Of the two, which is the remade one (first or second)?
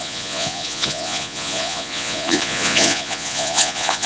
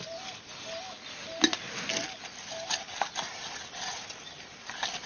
first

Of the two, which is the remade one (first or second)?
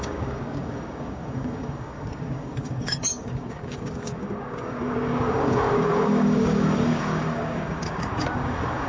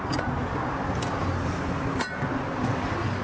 first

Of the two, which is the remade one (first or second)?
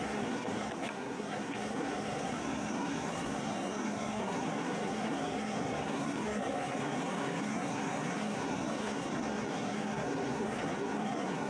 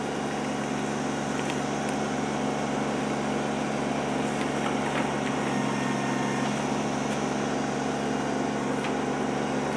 first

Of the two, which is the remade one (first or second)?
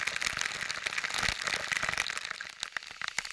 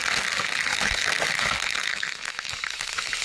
second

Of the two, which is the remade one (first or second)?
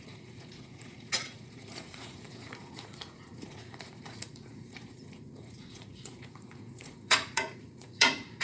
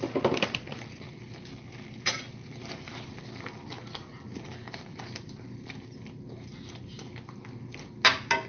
first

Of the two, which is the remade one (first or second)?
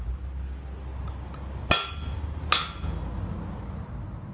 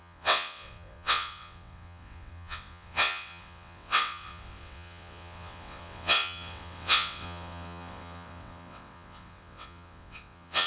second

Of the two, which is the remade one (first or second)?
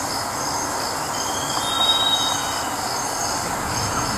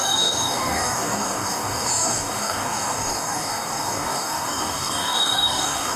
second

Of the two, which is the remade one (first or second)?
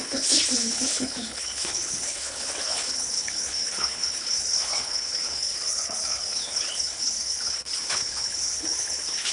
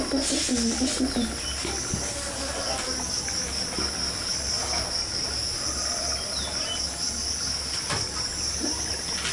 first